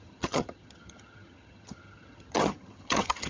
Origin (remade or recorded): remade